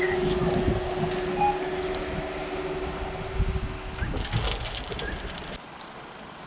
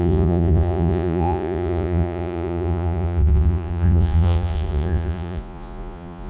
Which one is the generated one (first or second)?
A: second